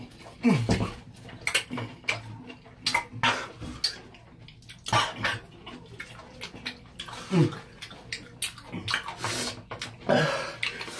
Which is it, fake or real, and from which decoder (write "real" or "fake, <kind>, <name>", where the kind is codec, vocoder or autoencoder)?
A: real